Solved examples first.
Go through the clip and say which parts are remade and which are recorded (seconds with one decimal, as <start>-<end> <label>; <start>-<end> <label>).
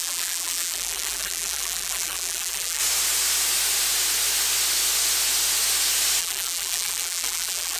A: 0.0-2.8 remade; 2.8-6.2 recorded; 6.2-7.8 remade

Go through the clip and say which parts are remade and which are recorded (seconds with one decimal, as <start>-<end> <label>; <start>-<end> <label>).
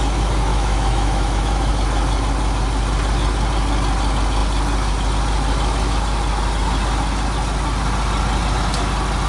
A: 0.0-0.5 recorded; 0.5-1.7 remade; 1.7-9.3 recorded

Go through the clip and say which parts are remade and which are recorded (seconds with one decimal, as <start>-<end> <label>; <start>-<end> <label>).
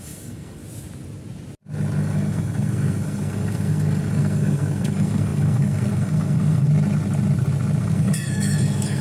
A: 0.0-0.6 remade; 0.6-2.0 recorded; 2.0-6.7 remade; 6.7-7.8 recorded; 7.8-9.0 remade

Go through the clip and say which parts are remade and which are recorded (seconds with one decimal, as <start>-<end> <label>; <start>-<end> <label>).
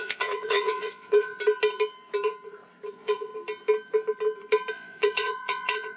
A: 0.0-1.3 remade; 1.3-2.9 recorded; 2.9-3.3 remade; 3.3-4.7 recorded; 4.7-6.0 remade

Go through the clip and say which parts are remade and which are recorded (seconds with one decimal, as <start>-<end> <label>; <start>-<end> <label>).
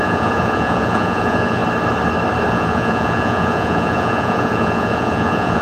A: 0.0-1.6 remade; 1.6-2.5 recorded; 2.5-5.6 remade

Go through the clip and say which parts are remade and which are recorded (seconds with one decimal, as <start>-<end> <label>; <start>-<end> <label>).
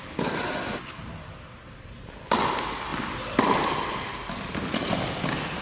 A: 0.0-5.6 recorded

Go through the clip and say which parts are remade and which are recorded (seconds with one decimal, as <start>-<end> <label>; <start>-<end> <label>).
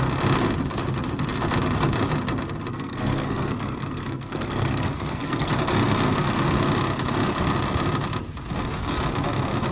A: 0.0-2.7 recorded; 2.7-5.5 remade; 5.5-9.7 recorded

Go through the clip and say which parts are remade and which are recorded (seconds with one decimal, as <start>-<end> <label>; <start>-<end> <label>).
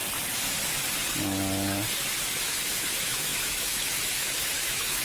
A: 0.0-2.2 recorded; 2.2-5.0 remade